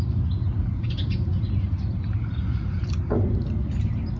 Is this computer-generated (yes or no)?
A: no